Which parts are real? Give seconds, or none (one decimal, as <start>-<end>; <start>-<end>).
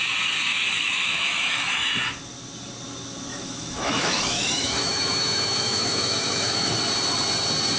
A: 0.0-0.5; 1.9-3.3; 6.7-7.8